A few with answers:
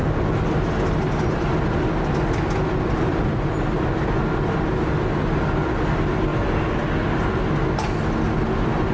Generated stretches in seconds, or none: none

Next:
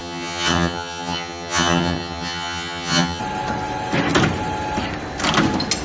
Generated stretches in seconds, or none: 0.0-3.2

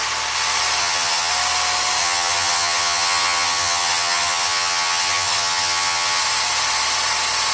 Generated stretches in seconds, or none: 0.8-1.3; 2.0-6.2

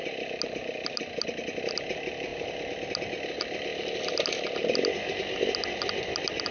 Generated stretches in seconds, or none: none

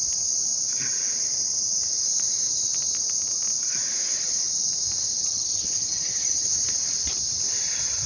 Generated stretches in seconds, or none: 5.2-6.4